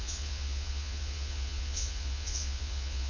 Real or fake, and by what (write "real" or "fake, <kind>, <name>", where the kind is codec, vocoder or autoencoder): fake, vocoder, Vocos